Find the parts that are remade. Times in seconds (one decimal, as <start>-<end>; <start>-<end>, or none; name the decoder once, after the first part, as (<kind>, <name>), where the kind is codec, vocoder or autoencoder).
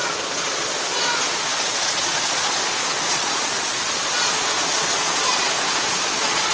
0.0-6.5 (vocoder, Vocos)